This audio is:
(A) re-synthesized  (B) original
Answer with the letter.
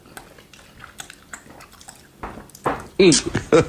B